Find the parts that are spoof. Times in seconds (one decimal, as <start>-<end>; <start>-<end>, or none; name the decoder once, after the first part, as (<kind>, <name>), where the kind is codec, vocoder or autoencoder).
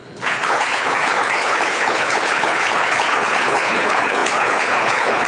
0.0-5.3 (codec, HILCodec)